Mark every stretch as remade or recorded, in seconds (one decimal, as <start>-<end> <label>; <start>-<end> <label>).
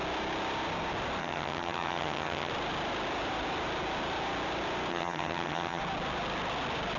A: 0.0-1.2 recorded; 1.2-2.5 remade; 2.5-4.9 recorded; 4.9-5.8 remade; 5.8-7.0 recorded